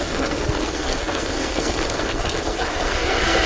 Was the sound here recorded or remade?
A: remade